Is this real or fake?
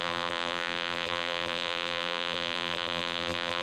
fake